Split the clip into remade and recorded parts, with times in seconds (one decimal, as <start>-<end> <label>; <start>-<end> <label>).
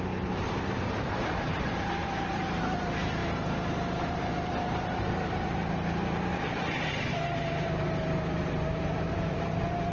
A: 0.0-9.9 remade